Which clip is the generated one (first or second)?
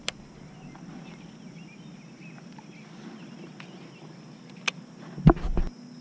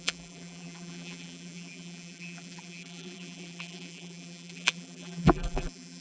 second